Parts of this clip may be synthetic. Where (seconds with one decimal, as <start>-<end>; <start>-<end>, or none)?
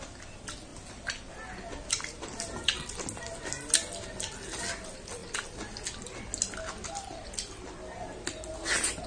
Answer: none